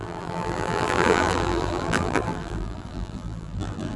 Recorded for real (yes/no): no